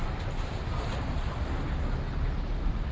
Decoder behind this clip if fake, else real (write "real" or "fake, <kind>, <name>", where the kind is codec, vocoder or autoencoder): real